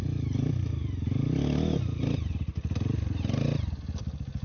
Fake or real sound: real